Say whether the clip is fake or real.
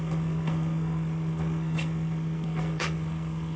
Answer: fake